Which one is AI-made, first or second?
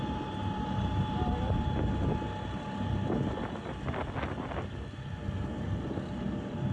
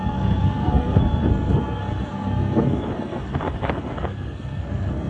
second